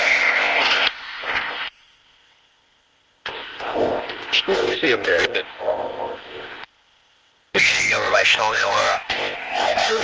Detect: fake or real fake